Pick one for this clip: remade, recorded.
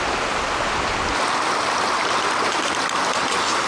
recorded